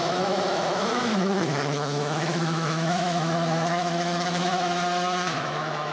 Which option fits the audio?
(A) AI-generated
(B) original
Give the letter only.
A